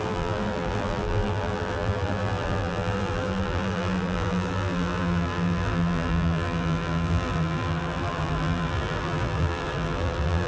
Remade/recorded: remade